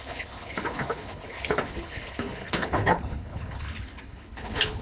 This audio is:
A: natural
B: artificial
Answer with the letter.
B